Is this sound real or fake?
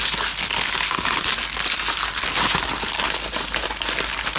real